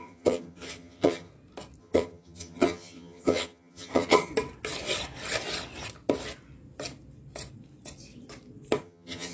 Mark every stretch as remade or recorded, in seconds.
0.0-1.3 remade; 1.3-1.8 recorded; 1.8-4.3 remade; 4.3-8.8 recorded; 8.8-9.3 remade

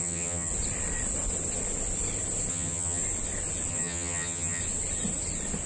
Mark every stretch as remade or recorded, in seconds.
0.0-0.5 remade; 0.5-2.5 recorded; 2.5-3.0 remade; 3.0-3.7 recorded; 3.7-4.6 remade; 4.6-5.7 recorded

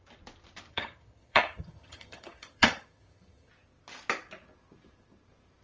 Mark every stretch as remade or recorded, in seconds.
0.0-0.7 recorded; 0.7-3.5 remade; 3.5-5.6 recorded

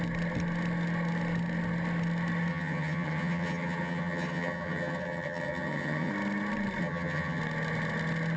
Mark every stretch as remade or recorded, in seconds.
0.0-2.5 recorded; 2.5-6.1 remade; 6.1-6.8 recorded; 6.8-7.4 remade; 7.4-8.4 recorded